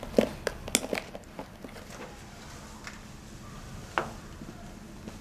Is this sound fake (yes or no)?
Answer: no